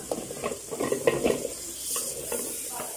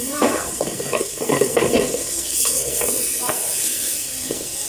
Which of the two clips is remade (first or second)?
second